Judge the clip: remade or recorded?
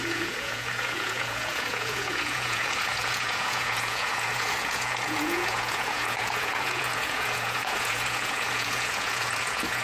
remade